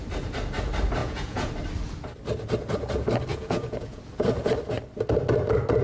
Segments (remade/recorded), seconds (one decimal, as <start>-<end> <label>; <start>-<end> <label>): 0.0-1.0 recorded; 1.0-1.5 remade; 1.5-3.3 recorded; 3.3-4.0 remade; 4.0-5.8 recorded